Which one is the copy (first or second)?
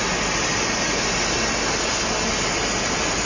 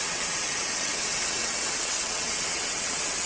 second